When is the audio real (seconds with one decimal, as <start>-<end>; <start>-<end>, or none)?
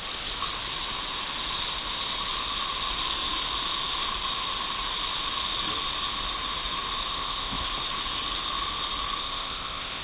0.0-7.1; 7.7-9.2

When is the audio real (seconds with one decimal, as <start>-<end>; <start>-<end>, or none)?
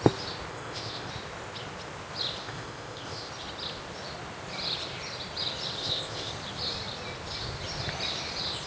0.0-0.5; 1.1-2.4; 3.3-5.8; 6.3-8.7